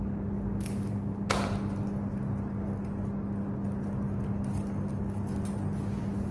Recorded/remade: recorded